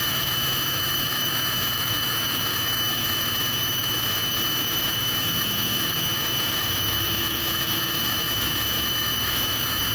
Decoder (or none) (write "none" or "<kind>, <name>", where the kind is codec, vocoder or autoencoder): autoencoder, DAC-VAE